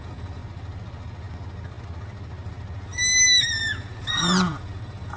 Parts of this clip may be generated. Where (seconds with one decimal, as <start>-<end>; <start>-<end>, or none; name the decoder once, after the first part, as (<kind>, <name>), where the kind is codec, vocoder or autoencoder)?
0.0-0.4 (vocoder, Vocos); 3.5-5.2